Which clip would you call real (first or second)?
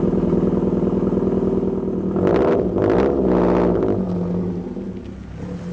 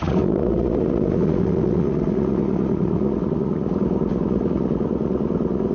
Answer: first